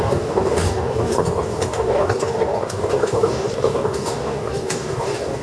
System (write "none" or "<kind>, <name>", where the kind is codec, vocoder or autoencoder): codec, DAC